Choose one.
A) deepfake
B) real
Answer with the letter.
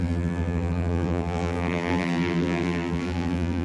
A